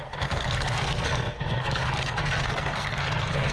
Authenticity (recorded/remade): remade